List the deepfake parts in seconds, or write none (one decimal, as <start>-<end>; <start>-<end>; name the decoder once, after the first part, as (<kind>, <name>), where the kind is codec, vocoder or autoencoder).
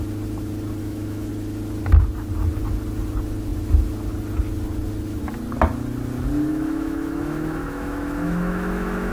0.8-1.3 (autoencoder, DAC-VAE); 6.5-9.1